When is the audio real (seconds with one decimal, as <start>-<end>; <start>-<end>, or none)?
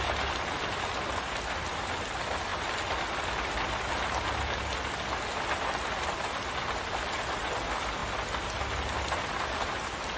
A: 0.0-10.2